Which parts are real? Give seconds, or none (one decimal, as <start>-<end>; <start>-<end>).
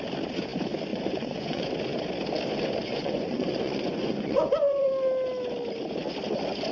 0.0-0.9; 1.7-2.9; 4.9-6.7